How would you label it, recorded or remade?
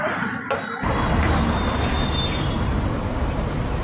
remade